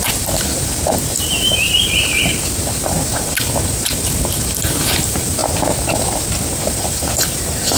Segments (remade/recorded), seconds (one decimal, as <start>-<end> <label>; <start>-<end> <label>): 0.0-0.5 remade; 0.5-1.1 recorded; 1.1-5.4 remade; 5.4-6.5 recorded; 6.5-7.8 remade